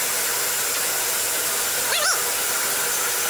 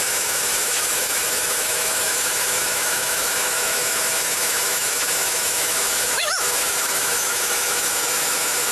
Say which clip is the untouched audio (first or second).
first